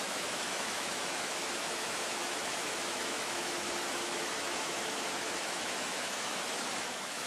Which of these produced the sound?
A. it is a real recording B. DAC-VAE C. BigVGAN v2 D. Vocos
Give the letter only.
B